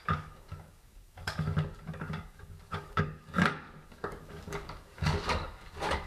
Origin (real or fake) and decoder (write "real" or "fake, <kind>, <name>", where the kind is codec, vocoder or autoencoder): fake, codec, DAC